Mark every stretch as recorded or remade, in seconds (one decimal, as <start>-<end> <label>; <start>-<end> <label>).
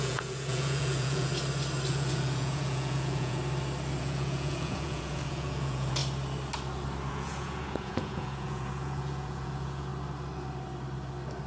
0.0-1.3 remade; 1.3-1.9 recorded; 1.9-3.4 remade; 3.4-4.0 recorded; 4.0-6.0 remade; 6.0-7.1 recorded; 7.1-9.9 remade; 9.9-11.5 recorded